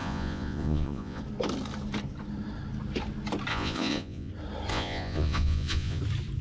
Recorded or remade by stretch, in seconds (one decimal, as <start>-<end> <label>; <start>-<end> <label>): 0.0-1.2 remade; 1.2-3.5 recorded; 3.5-4.3 remade; 4.3-4.7 recorded; 4.7-6.0 remade; 6.0-6.4 recorded